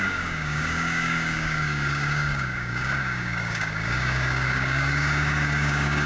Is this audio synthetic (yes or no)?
yes